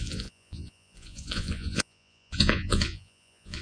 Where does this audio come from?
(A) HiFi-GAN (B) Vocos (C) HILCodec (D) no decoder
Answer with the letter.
B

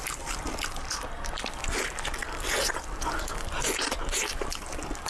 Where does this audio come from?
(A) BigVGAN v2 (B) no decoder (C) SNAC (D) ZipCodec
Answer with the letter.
B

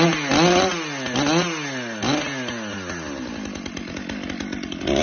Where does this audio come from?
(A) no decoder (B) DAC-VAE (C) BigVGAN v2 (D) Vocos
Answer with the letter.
A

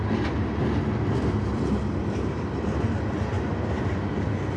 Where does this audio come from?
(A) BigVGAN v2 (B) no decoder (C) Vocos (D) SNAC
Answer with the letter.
B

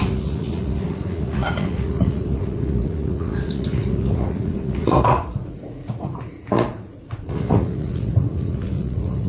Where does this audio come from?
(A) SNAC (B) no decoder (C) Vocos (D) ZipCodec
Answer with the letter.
C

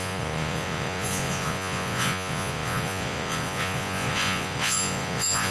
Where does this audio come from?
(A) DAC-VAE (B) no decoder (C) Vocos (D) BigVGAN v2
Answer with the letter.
C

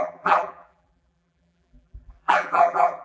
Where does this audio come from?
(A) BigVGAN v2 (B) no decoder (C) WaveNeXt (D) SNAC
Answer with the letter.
A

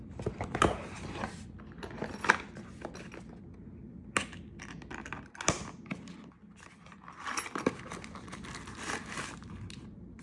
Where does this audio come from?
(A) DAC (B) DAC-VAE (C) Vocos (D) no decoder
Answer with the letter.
D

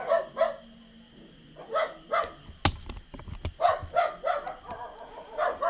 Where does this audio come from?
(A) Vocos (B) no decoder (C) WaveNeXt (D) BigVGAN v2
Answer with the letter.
B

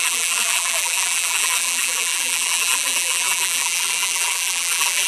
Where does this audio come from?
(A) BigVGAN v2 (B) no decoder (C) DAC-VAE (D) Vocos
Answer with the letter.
A